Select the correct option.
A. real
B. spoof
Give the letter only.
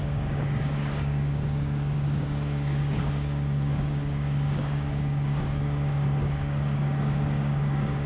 B